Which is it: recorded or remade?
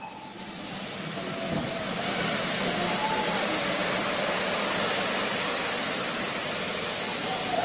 recorded